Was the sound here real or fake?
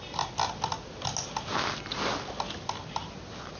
real